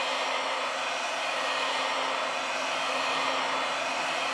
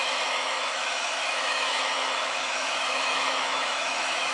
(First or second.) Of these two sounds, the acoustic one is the first